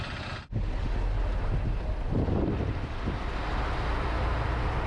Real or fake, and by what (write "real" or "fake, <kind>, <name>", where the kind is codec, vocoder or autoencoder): real